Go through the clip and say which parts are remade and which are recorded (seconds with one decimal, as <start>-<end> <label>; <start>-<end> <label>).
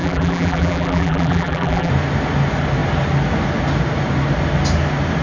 0.0-1.9 remade; 1.9-5.2 recorded